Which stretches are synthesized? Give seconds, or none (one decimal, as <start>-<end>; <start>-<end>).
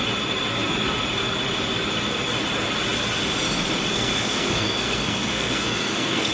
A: 3.9-6.3